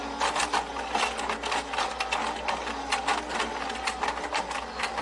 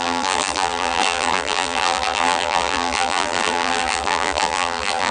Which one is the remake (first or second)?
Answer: second